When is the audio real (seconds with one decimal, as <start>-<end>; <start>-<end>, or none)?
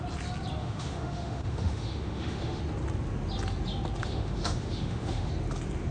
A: 0.0-0.6; 2.6-4.0; 5.3-5.9